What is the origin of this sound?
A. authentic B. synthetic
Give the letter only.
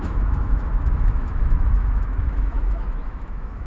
B